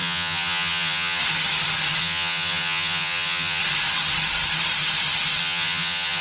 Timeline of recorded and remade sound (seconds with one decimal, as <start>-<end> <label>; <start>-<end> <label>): 0.0-1.2 remade; 1.2-2.0 recorded; 2.0-3.6 remade; 3.6-5.4 recorded; 5.4-6.2 remade